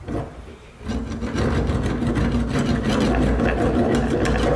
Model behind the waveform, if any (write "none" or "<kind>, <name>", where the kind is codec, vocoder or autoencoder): none